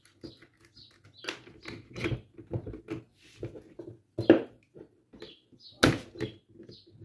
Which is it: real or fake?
real